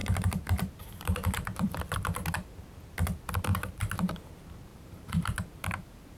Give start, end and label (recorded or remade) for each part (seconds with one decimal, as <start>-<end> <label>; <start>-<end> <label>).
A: 0.0-2.5 remade; 2.5-3.5 recorded; 3.5-4.1 remade; 4.1-4.7 recorded; 4.7-6.2 remade